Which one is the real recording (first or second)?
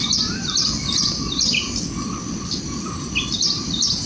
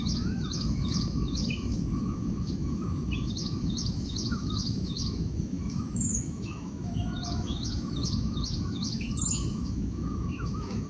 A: first